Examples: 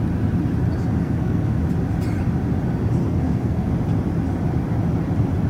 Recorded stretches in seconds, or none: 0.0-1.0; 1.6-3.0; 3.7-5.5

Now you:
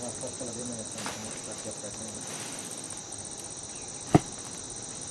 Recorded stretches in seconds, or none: 0.0-5.1

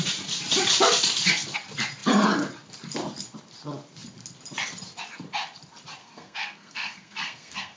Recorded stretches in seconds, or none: 0.0-6.0

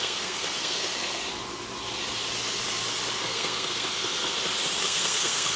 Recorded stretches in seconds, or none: 1.2-3.2; 4.3-4.8

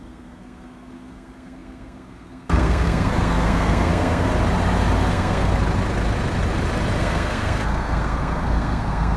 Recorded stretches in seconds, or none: 4.3-5.1; 5.5-7.0